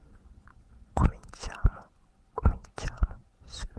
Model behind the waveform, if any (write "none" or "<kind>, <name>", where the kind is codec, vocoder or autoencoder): vocoder, Vocos